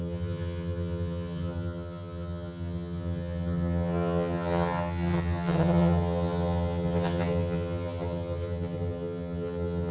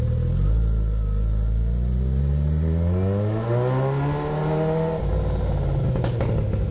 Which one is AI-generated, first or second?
first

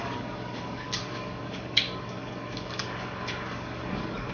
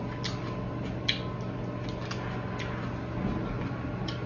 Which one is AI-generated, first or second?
first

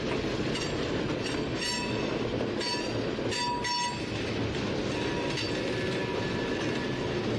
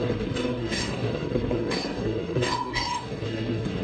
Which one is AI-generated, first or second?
second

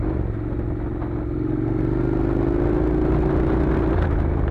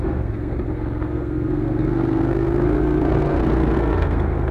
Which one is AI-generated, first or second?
second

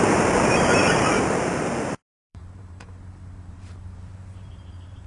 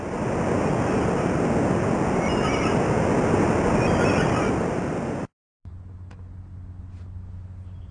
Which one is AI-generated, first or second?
first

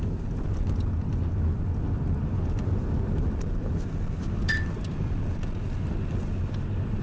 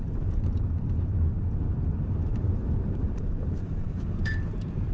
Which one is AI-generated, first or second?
second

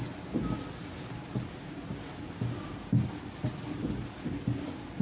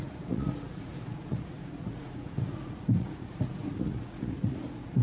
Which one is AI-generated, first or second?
second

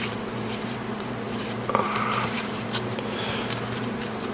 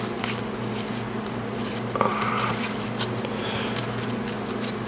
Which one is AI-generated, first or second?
first